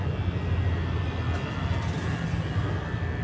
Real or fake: real